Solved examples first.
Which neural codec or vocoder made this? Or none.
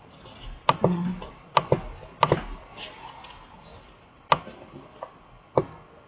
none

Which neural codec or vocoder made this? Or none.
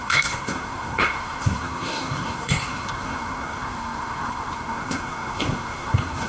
codec, SNAC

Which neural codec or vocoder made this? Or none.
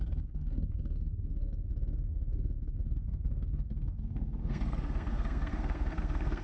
codec, SNAC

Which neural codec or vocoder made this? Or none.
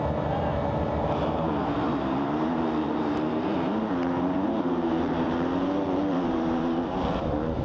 vocoder, BigVGAN v2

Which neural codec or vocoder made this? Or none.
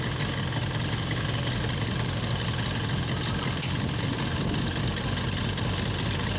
none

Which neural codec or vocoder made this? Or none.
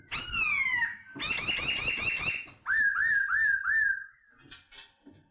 none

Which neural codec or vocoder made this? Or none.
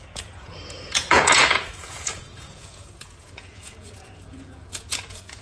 vocoder, Vocos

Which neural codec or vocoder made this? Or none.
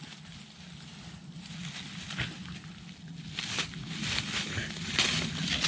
none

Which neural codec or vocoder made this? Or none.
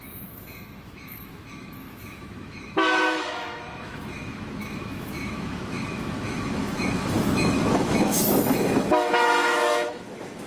autoencoder, DAC-VAE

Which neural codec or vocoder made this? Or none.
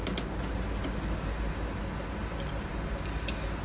none